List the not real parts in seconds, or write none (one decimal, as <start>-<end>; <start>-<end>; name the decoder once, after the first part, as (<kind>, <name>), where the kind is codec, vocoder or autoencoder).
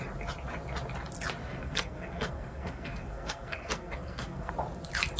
1.4-4.5 (codec, SNAC)